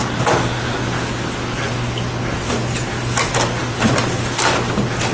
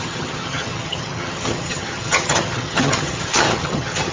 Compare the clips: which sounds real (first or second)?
first